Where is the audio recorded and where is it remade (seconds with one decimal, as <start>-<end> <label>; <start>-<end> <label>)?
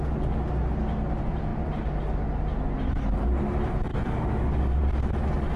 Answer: 0.0-3.9 recorded; 3.9-4.8 remade; 4.8-5.6 recorded